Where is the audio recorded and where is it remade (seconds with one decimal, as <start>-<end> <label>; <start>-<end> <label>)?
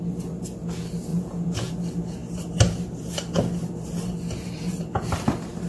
0.0-1.1 recorded; 1.1-1.7 remade; 1.7-5.7 recorded